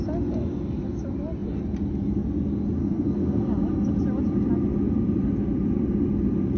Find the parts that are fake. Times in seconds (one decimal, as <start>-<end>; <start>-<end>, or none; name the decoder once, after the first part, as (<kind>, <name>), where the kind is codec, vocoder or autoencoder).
2.8-3.4 (codec, SNAC)